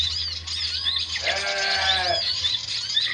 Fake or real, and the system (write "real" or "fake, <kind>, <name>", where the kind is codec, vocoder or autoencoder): real